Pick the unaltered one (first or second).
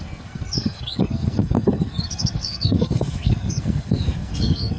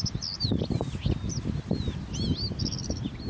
second